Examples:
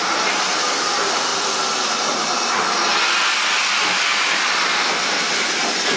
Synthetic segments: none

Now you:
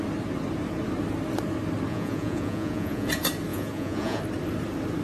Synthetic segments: 1.9-3.1 (vocoder, Vocos); 3.5-4.2

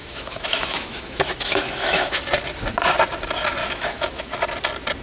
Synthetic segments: 0.0-2.2 (autoencoder, DAC-VAE); 3.6-4.3

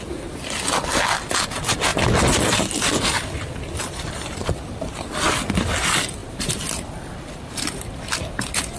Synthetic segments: none

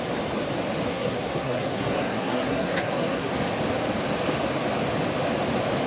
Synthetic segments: 0.9-3.3 (codec, SNAC)

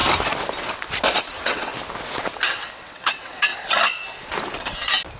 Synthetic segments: 1.2-1.7 (vocoder, WaveNeXt); 2.7-3.5